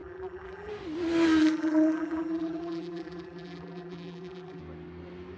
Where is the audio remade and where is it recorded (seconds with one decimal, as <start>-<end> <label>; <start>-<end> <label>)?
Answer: 0.0-0.7 remade; 0.7-1.4 recorded; 1.4-4.6 remade; 4.6-5.4 recorded